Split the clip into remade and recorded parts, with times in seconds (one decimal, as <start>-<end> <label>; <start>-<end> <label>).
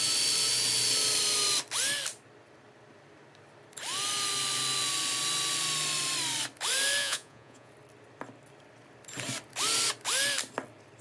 0.0-7.0 recorded; 7.0-7.7 remade; 7.7-11.0 recorded